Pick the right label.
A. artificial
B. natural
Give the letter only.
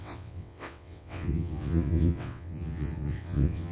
A